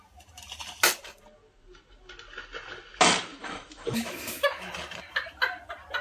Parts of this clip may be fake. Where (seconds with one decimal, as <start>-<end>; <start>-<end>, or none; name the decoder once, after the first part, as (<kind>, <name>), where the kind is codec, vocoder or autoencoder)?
3.3-4.7 (autoencoder, DAC-VAE)